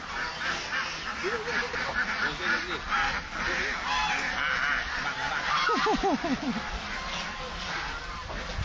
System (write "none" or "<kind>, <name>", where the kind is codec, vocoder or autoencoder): none